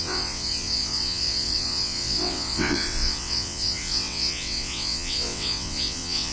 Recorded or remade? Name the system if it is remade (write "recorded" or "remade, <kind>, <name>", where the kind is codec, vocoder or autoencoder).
remade, vocoder, WaveNeXt